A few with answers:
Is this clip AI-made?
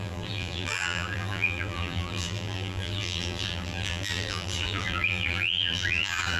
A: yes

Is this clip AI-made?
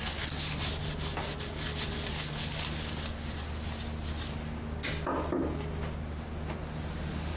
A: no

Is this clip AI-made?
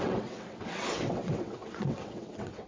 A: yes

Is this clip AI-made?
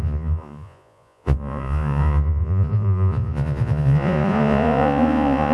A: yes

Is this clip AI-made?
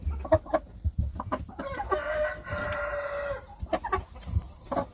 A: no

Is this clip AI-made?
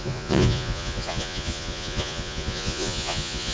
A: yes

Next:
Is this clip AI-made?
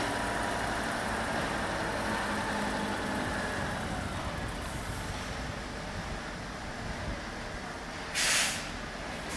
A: no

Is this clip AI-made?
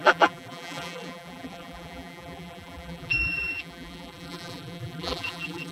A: yes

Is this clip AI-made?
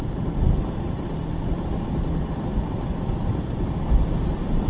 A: no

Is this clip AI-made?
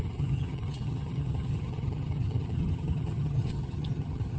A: yes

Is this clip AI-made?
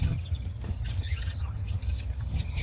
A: yes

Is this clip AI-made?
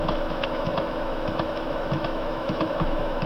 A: yes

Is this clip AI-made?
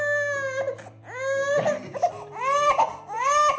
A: no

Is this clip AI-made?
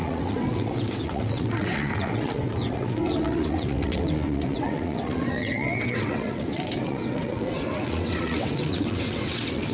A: yes